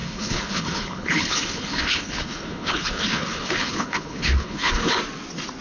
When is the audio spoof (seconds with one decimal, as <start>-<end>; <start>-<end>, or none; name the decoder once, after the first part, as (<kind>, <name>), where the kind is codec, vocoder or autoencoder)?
0.0-5.0 (codec, HILCodec)